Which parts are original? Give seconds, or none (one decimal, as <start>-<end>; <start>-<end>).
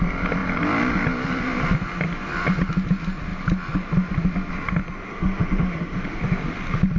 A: 0.0-5.0; 6.2-7.0